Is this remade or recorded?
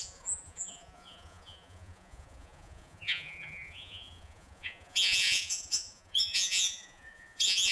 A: remade